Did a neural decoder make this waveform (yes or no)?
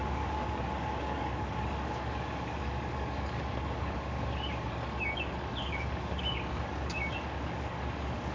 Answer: yes